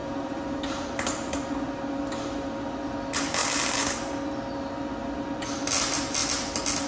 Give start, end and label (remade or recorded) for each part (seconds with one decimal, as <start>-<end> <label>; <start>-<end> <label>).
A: 0.0-1.8 remade; 1.8-6.9 recorded

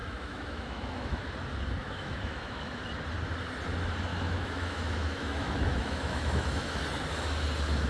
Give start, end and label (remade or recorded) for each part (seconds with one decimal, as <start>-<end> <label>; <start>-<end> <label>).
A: 0.0-1.3 remade; 1.3-1.8 recorded; 1.8-2.8 remade; 2.8-4.1 recorded; 4.1-6.8 remade; 6.8-7.9 recorded

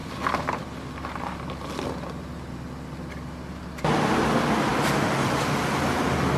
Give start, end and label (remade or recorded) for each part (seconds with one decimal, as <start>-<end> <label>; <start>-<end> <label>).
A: 0.0-6.4 recorded

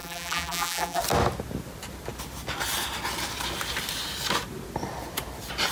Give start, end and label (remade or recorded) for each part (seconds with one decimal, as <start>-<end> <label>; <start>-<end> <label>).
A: 0.0-1.0 remade; 1.0-5.7 recorded

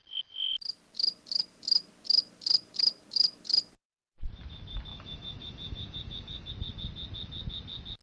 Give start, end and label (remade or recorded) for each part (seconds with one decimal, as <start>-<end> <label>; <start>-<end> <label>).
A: 0.0-4.9 recorded; 4.9-6.5 remade; 6.5-8.0 recorded

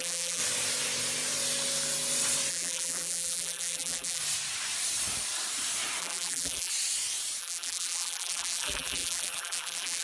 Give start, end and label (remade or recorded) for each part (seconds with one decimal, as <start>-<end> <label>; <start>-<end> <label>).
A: 0.0-0.4 remade; 0.4-2.5 recorded; 2.5-4.2 remade; 4.2-6.0 recorded; 6.0-6.7 remade; 6.7-7.4 recorded; 7.4-10.0 remade

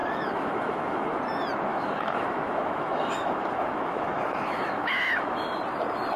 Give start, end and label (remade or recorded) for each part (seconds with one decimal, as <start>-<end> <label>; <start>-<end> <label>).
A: 0.0-1.2 remade; 1.2-1.7 recorded; 1.7-5.4 remade; 5.4-6.2 recorded

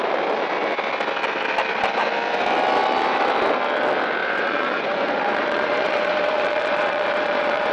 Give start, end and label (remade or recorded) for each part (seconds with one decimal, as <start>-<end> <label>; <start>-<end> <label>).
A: 0.0-4.2 recorded; 4.2-7.7 remade